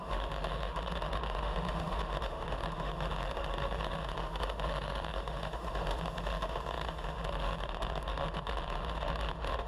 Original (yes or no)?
no